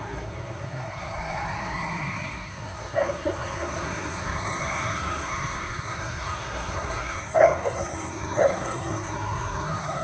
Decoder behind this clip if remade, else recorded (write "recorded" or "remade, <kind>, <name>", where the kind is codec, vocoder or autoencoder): remade, codec, SNAC